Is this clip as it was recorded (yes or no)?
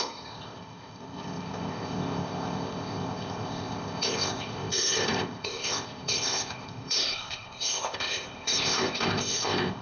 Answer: no